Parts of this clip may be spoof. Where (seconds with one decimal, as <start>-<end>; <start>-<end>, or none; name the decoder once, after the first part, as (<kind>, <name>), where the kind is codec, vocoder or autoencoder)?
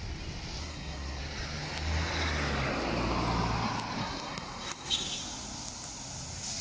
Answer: 0.6-1.2 (codec, SNAC); 4.0-5.2